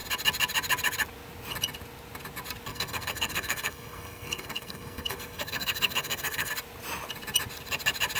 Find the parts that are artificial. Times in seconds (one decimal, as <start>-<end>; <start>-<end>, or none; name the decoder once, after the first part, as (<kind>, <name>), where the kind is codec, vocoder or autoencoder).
2.7-6.5 (codec, SNAC)